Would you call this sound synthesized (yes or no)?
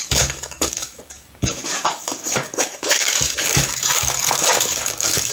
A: yes